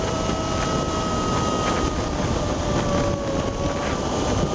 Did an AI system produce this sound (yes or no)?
no